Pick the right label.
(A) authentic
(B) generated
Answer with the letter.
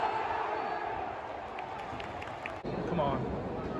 A